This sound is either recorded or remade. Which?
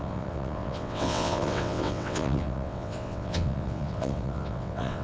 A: remade